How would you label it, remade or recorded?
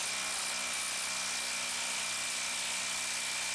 recorded